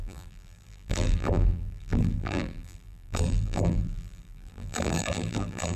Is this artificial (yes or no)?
yes